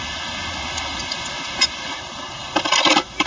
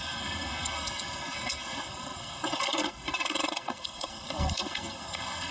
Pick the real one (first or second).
first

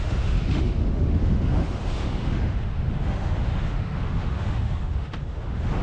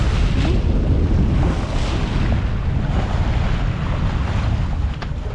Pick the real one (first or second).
second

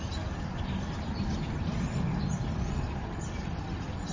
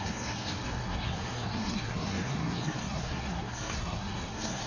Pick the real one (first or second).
first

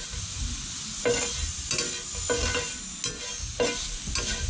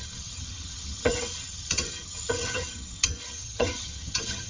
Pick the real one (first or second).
first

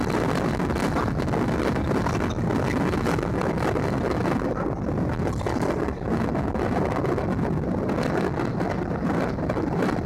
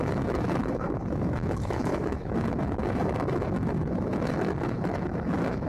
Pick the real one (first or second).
first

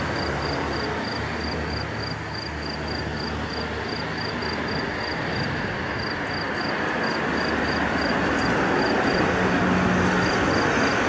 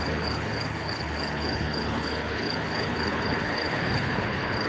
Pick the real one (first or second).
first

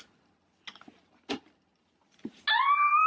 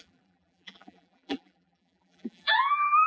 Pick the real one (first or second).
first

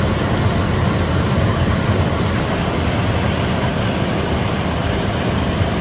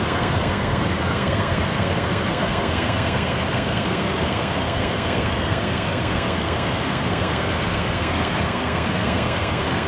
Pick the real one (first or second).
first